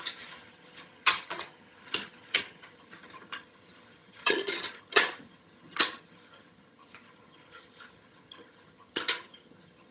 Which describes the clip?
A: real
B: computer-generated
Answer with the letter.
B